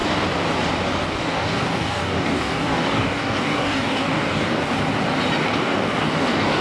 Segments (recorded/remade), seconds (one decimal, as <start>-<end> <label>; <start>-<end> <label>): 0.0-1.1 recorded; 1.1-4.6 remade; 4.6-5.4 recorded; 5.4-6.6 remade